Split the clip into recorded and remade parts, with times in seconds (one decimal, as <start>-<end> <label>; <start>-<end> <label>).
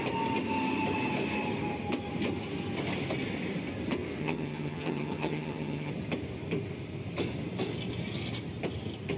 0.0-4.2 recorded; 4.2-5.9 remade; 5.9-9.2 recorded